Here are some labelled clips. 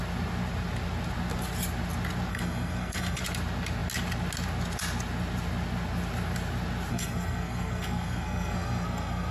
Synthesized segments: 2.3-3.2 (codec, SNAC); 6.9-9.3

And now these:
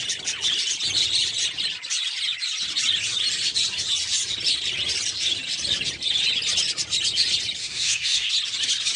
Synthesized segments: 7.6-8.3 (codec, SNAC)

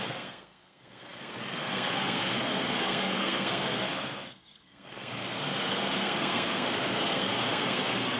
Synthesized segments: 0.0-8.2 (codec, SNAC)

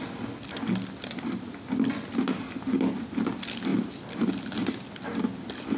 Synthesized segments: none

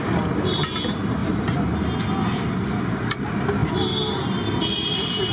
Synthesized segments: none

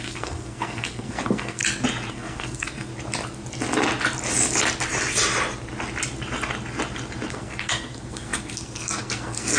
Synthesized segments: 0.0-1.6 (codec, SNAC); 2.1-2.9; 7.3-9.6